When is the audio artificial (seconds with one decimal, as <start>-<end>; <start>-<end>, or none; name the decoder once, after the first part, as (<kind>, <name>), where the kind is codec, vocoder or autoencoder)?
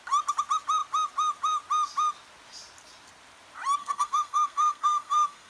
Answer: 3.8-5.5 (codec, SNAC)